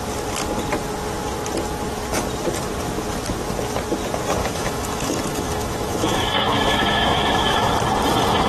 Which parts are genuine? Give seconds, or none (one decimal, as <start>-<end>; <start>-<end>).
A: 0.0-4.4; 7.7-8.5